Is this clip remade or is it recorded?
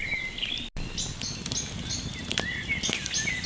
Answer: recorded